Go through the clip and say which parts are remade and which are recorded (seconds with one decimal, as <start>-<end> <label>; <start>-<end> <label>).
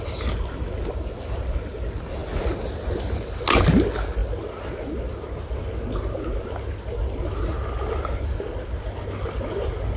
0.0-10.0 recorded